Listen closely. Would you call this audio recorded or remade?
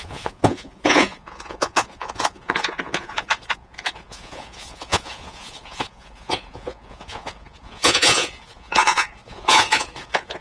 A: remade